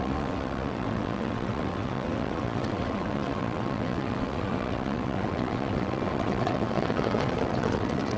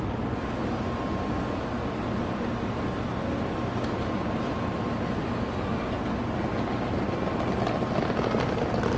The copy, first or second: first